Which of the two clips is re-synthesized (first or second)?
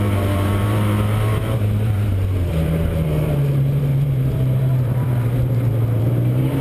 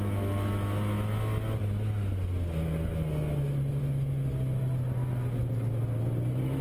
first